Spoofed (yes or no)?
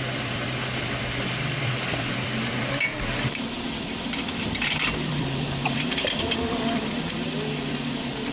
yes